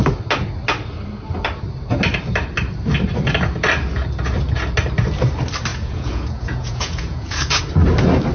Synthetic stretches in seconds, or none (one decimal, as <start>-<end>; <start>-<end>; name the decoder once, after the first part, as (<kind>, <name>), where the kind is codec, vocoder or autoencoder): 5.7-7.6 (vocoder, Vocos)